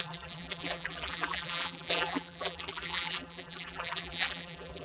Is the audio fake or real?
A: fake